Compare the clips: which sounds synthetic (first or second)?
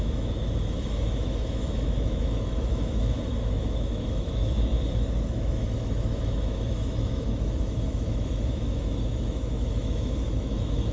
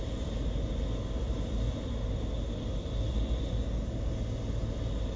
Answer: first